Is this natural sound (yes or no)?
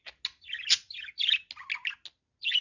yes